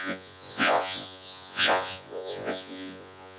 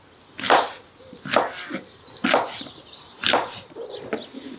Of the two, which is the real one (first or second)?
second